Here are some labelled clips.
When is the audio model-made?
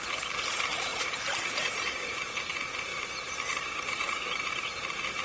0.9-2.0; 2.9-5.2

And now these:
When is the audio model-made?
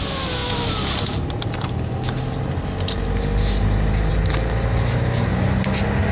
none